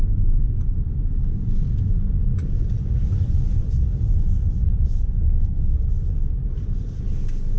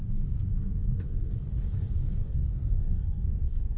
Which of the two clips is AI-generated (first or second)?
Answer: second